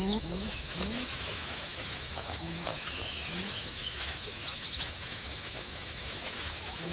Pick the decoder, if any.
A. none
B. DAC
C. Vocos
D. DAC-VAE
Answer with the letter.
D